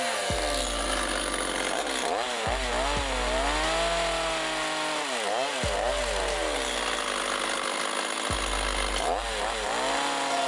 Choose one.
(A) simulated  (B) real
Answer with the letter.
B